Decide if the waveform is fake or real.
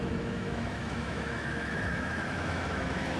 fake